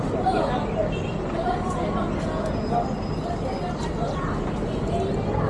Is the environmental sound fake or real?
real